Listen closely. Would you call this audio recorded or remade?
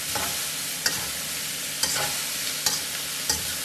recorded